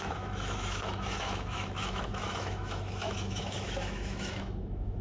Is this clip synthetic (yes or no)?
yes